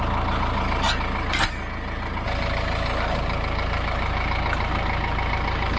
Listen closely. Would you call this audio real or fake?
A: real